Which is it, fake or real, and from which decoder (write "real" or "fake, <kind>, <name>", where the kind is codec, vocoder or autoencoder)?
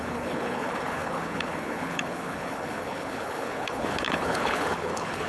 fake, codec, HILCodec